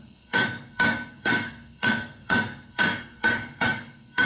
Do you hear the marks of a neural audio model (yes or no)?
yes